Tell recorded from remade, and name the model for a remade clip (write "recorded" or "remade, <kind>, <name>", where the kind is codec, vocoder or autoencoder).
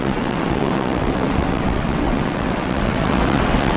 remade, vocoder, WaveNeXt